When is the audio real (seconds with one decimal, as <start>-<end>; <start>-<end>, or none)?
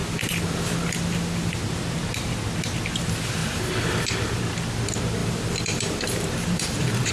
1.6-3.4; 4.4-5.2